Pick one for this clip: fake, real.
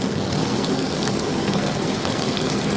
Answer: fake